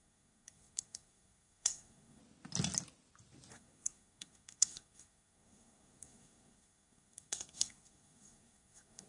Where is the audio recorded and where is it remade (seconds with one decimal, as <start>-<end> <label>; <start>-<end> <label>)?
0.0-2.2 remade; 2.2-3.5 recorded; 3.5-9.1 remade